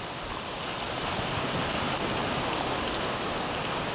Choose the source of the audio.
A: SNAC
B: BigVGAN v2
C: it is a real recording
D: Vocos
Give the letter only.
C